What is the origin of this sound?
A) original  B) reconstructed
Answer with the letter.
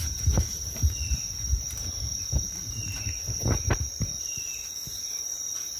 A